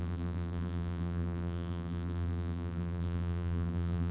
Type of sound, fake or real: fake